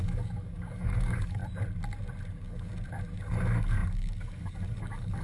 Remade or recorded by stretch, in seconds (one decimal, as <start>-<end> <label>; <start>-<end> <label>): 0.0-1.4 remade; 1.4-2.3 recorded; 2.3-2.7 remade; 2.7-3.2 recorded; 3.2-5.2 remade